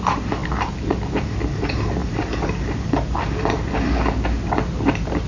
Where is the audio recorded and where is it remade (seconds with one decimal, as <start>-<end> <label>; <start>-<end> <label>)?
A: 0.0-5.3 recorded